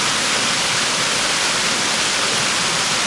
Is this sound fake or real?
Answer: real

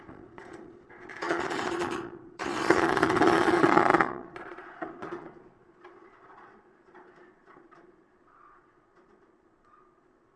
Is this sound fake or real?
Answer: fake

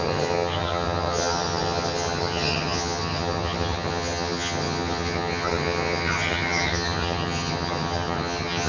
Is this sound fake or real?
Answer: fake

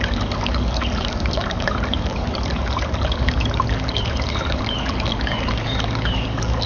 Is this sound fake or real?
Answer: fake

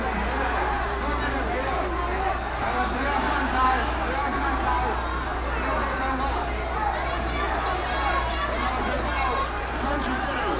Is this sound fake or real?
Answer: real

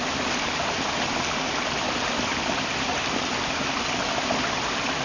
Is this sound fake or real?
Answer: real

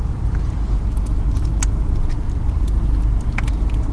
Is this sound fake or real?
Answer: real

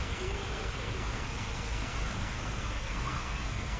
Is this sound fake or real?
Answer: fake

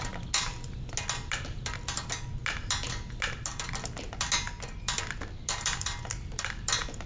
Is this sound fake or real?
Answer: real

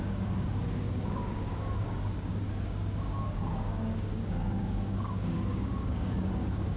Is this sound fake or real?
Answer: fake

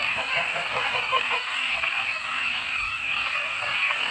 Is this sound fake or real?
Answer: fake